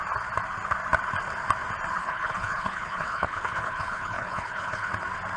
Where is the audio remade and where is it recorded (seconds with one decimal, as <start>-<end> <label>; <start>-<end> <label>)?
0.0-2.0 recorded; 2.0-4.9 remade; 4.9-5.4 recorded